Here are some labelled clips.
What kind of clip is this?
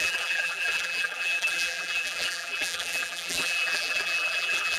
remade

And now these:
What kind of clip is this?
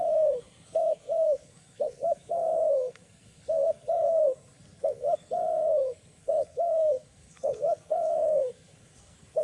remade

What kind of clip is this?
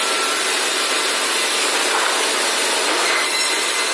recorded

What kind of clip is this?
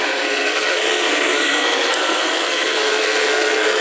remade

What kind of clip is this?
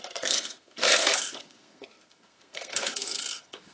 remade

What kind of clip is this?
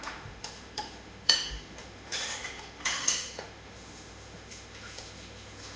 remade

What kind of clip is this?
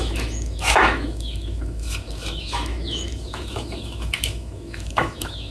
remade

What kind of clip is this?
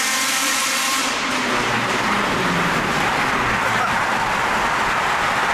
recorded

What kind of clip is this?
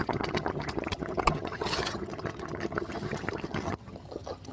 remade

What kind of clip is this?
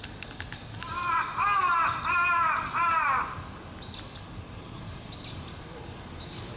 recorded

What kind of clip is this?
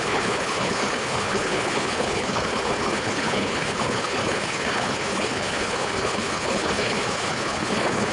remade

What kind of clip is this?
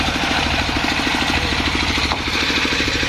recorded